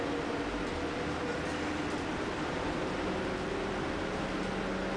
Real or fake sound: real